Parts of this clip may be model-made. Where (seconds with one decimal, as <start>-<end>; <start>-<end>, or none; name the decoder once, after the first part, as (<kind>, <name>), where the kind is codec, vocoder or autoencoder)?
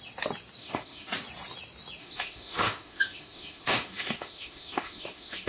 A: 0.6-1.1 (autoencoder, DAC-VAE); 2.0-5.5